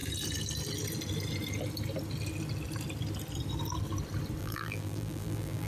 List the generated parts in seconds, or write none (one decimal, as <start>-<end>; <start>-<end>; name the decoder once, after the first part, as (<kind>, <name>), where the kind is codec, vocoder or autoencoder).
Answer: 4.4-5.7 (vocoder, BigVGAN v2)